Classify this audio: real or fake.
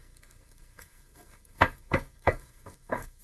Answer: fake